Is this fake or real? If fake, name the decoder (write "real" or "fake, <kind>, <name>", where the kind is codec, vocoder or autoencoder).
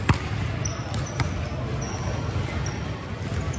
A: real